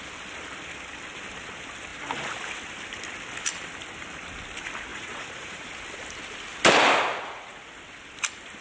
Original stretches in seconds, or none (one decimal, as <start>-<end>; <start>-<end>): 0.0-4.9; 5.7-7.1; 7.7-8.6